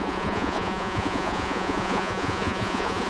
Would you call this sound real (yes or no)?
no